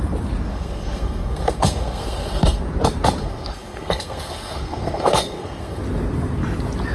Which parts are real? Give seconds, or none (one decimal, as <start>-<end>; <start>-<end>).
0.0-0.5; 2.6-3.2; 5.8-6.9